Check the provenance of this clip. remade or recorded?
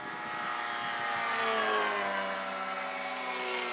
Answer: recorded